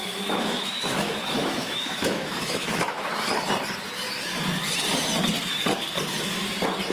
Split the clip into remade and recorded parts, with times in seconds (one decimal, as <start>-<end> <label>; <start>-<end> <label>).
0.0-3.1 remade; 3.1-6.9 recorded